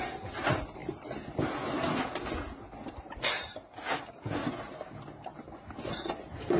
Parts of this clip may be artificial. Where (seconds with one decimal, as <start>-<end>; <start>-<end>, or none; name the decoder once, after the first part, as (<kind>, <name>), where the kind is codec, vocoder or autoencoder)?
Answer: none